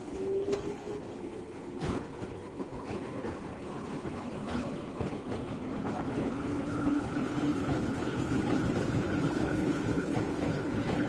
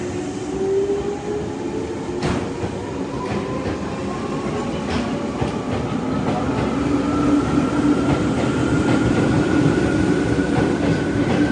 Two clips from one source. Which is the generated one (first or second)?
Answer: first